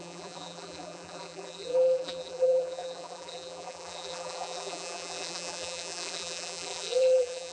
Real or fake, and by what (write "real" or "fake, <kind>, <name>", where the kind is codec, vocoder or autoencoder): fake, vocoder, BigVGAN v2